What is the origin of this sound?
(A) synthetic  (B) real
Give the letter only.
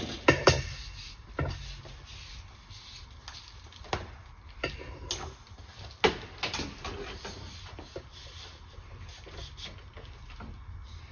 B